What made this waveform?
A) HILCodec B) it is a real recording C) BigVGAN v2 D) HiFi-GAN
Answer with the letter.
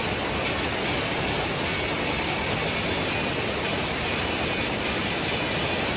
B